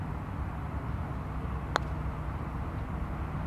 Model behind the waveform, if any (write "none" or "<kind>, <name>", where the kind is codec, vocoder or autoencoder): none